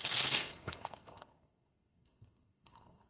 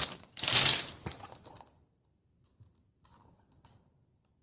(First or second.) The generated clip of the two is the first